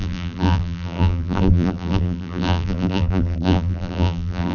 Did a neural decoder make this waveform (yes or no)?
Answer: yes